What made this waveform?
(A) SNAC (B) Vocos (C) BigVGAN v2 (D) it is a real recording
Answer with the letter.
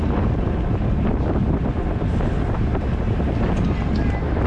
D